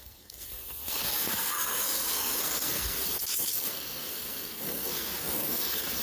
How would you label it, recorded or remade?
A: remade